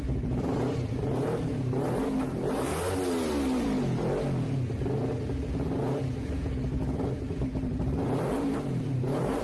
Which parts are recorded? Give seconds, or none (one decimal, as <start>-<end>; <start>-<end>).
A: 2.7-7.2